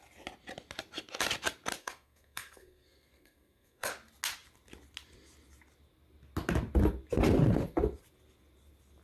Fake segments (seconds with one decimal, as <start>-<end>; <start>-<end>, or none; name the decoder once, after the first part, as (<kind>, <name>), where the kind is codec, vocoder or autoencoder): 1.8-3.9 (codec, SNAC)